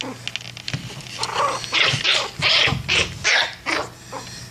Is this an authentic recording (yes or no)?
yes